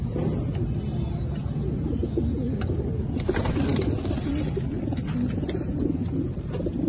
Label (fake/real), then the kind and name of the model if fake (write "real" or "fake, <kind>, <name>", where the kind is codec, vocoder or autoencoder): real